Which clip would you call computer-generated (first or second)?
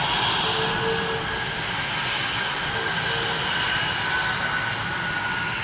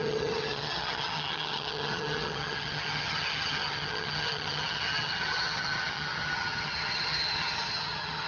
second